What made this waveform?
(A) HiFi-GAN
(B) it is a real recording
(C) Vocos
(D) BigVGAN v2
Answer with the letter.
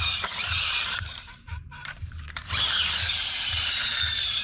D